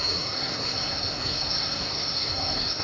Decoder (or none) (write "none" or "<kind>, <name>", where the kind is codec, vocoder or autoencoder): codec, SNAC